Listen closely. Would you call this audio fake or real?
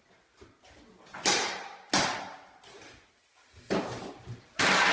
real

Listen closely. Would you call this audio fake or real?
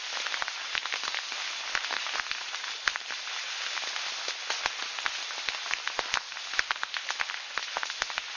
real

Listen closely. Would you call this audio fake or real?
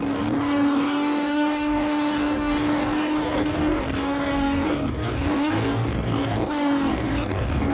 fake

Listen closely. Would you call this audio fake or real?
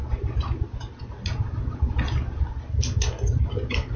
real